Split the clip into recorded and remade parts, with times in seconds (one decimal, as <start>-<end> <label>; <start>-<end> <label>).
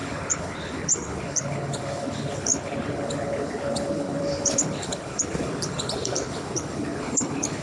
0.0-7.6 remade